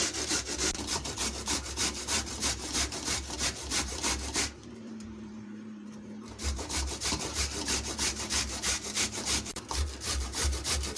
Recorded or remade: remade